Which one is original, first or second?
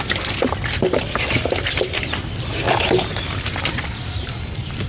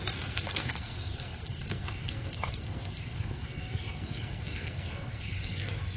first